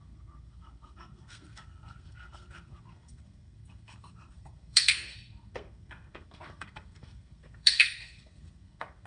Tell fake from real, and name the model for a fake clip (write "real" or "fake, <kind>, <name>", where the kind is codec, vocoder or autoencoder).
fake, codec, SNAC